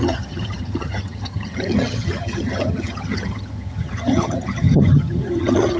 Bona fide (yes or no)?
no